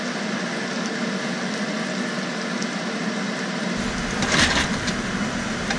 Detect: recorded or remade recorded